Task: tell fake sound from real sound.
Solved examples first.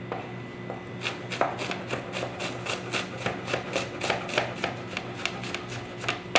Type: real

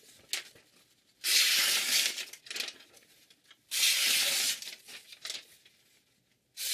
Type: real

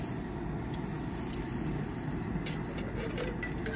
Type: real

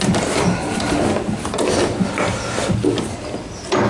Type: real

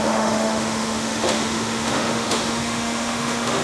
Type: fake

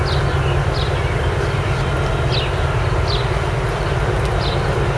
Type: real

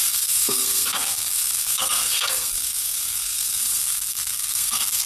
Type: fake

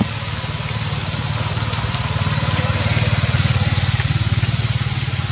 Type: real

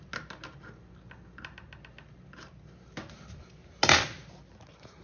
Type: real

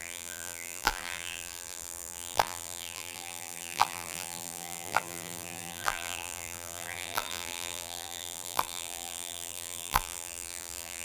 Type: fake